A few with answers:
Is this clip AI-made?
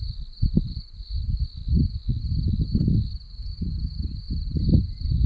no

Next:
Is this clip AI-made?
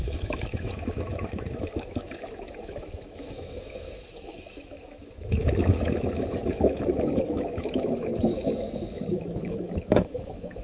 yes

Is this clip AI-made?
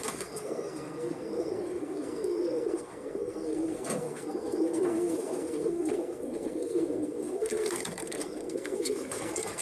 yes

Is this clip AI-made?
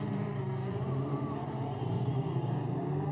yes